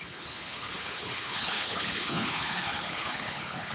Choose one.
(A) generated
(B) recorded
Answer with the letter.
A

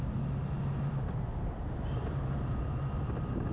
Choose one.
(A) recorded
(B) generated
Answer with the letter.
A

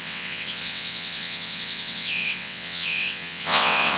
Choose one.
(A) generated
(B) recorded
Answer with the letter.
A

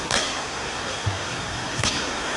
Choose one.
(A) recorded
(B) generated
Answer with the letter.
B